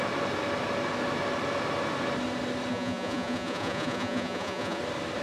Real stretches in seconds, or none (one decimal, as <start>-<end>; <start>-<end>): 0.0-2.7; 4.8-5.2